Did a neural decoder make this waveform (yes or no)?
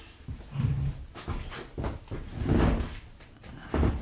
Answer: no